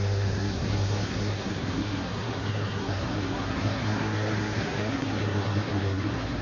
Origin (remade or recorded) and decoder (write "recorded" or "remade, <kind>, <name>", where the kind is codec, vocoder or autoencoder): remade, codec, SNAC